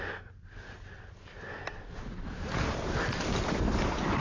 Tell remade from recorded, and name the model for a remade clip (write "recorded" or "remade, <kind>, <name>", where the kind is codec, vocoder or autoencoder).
recorded